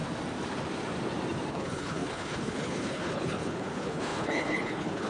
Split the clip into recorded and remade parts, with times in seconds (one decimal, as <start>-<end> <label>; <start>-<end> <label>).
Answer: 0.0-1.5 recorded; 1.5-5.1 remade